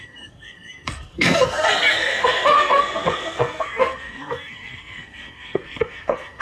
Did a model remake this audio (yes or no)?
yes